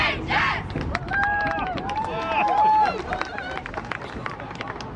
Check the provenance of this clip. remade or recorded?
recorded